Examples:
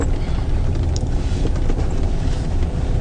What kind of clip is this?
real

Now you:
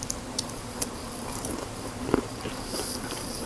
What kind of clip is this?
fake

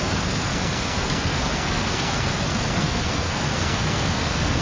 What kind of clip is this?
fake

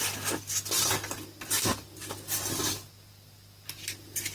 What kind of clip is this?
real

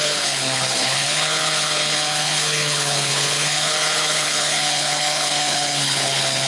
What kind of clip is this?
fake